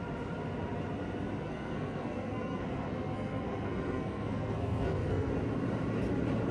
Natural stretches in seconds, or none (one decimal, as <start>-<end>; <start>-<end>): 0.0-1.4; 5.3-6.5